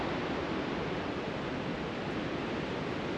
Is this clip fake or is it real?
real